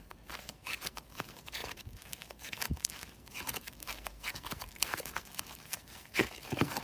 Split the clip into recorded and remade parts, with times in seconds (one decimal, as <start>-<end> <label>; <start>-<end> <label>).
0.0-6.8 remade